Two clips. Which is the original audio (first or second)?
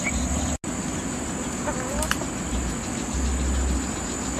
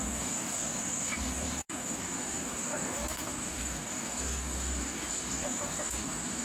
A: first